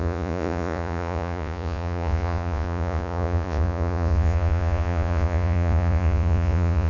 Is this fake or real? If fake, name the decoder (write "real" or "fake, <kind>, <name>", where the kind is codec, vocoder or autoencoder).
fake, vocoder, Vocos